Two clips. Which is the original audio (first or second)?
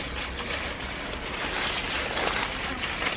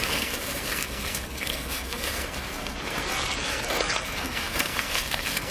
first